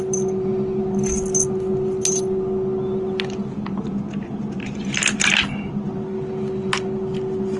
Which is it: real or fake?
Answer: real